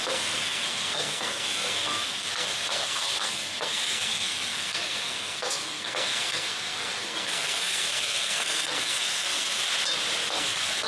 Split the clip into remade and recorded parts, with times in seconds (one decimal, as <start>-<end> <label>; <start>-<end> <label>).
0.0-9.6 remade; 9.6-10.3 recorded; 10.3-10.9 remade